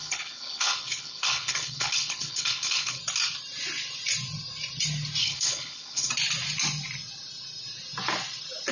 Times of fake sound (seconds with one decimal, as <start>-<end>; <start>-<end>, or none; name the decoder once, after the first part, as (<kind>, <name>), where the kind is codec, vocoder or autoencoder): 0.0-3.0 (codec, HILCodec); 5.2-6.1